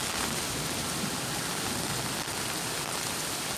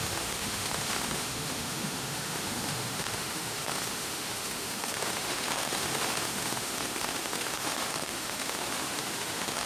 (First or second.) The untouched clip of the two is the first